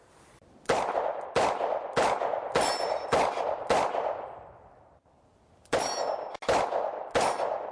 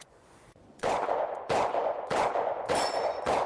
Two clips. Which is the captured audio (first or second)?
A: first